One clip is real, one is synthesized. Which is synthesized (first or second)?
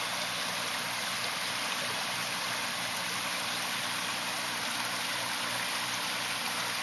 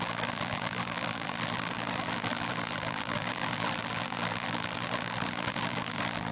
second